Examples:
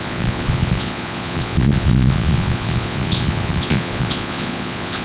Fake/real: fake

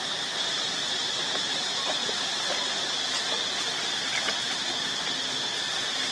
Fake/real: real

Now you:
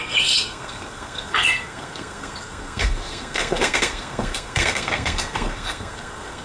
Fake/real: fake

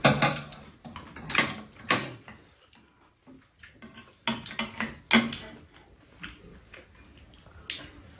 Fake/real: real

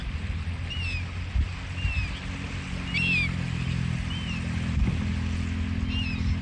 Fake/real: real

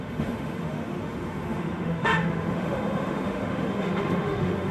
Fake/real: fake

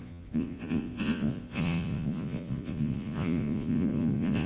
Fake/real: fake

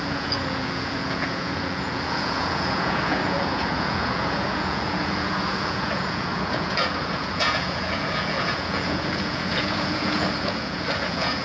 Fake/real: fake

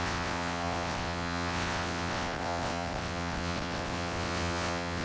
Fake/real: fake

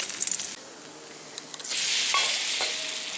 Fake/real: real